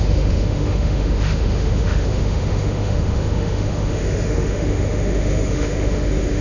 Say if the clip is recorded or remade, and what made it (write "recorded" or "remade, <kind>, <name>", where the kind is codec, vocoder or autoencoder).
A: remade, autoencoder, DAC-VAE